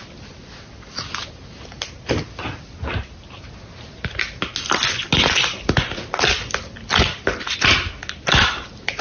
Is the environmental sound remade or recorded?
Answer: recorded